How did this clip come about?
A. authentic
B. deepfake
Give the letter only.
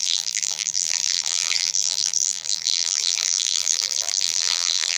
B